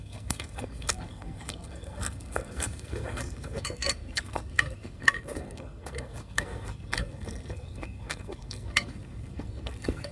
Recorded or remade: remade